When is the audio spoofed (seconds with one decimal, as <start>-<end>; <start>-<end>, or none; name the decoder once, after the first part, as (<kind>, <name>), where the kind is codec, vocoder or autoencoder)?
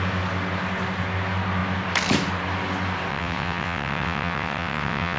3.1-5.2 (vocoder, WaveNeXt)